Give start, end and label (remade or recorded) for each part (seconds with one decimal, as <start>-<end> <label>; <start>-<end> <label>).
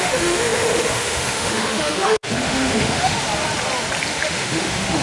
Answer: 0.0-3.2 remade; 3.2-4.1 recorded; 4.1-5.0 remade